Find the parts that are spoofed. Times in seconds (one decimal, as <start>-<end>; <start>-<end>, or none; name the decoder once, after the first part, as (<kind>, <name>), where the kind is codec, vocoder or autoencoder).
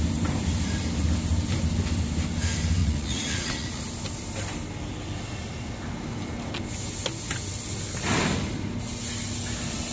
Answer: 2.8-3.8 (vocoder, Vocos)